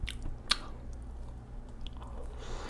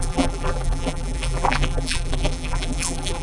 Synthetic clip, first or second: second